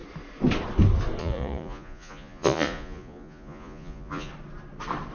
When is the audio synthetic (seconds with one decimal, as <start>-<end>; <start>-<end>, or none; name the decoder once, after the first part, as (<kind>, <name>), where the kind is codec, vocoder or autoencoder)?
1.2-4.3 (vocoder, Vocos)